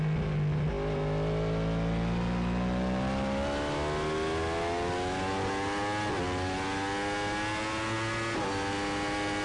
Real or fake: real